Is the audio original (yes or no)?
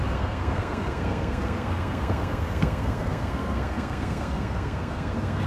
no